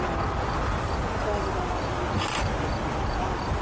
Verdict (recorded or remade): recorded